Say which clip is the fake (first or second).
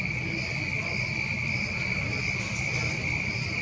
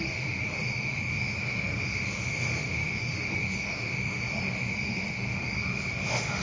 second